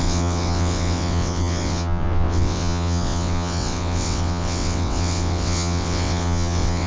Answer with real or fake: fake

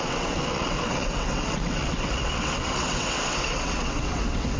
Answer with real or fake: fake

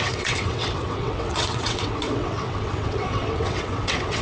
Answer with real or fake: fake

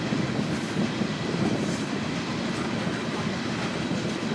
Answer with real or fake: real